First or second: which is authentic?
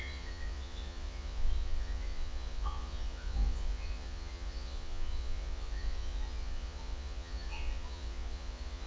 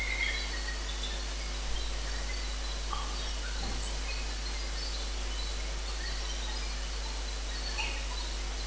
second